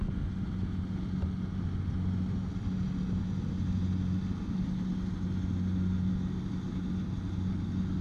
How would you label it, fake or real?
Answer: real